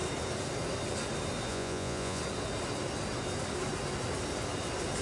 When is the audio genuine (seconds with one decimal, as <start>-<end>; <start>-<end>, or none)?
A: 0.0-1.5; 2.2-5.0